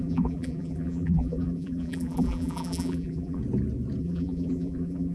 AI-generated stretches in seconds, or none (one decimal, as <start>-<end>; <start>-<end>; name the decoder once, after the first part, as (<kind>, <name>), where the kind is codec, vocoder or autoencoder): 0.0-3.4 (vocoder, BigVGAN v2); 4.0-5.1